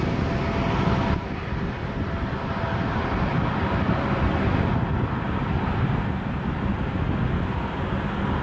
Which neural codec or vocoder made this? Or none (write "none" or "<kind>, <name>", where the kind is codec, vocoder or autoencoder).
none